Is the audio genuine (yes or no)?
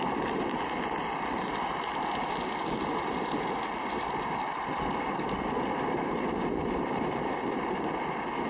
yes